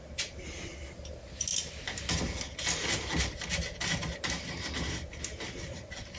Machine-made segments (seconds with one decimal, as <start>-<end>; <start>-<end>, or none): none